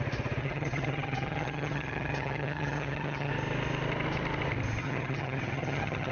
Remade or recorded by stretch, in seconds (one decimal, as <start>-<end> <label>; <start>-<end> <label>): 0.0-0.4 recorded; 0.4-3.3 remade; 3.3-4.8 recorded; 4.8-6.1 remade